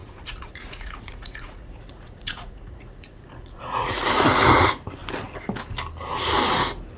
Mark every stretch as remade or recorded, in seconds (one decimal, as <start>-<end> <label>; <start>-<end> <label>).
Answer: 0.0-4.0 remade; 4.0-7.0 recorded